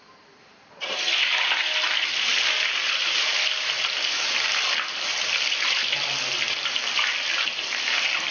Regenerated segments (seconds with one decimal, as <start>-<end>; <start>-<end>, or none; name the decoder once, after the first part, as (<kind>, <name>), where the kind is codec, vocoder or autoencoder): none